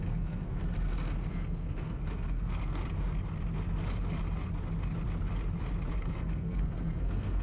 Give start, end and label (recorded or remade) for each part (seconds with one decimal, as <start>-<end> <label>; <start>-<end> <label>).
0.0-0.6 remade; 0.6-1.3 recorded; 1.3-2.8 remade; 2.8-6.0 recorded; 6.0-7.4 remade